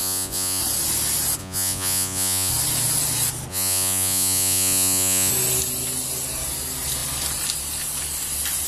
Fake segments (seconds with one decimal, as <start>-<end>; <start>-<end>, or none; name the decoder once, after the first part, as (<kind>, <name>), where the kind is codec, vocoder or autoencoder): 0.0-0.6 (vocoder, Vocos); 1.4-2.5; 3.5-5.3